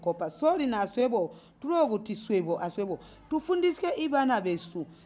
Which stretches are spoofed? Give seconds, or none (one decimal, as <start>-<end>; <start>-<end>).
none

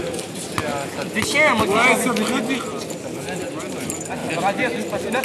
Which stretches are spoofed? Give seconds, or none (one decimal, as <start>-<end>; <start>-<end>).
none

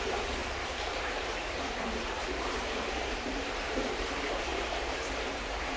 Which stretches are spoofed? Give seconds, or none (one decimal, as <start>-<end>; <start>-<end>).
0.0-5.8

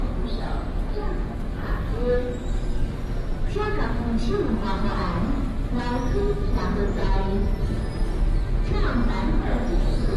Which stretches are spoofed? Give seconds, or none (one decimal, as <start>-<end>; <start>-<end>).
none

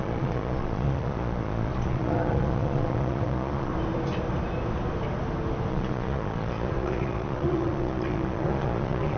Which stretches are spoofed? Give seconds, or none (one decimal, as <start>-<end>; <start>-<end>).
0.0-3.7; 5.7-9.2

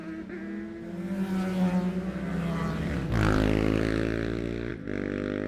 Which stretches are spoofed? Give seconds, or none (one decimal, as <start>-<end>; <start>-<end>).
none

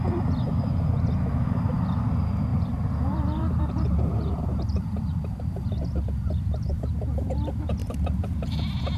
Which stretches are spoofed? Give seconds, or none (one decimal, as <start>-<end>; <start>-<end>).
2.5-6.9; 7.8-8.6

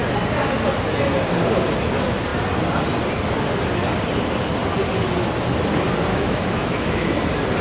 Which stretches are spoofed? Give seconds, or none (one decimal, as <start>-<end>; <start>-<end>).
6.1-7.1